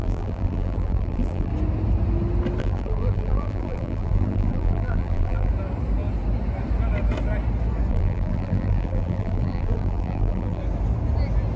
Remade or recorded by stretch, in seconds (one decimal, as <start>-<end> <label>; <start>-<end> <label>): 0.0-1.5 remade; 1.5-2.6 recorded; 2.6-5.5 remade; 5.5-7.9 recorded; 7.9-10.6 remade; 10.6-11.6 recorded